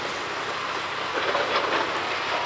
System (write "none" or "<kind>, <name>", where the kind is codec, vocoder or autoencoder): none